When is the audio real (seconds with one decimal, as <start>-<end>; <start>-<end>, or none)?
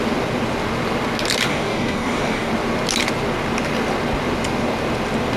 0.0-1.5; 2.5-5.4